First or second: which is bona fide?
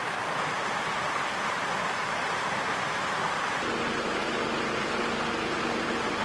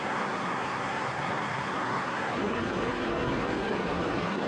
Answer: first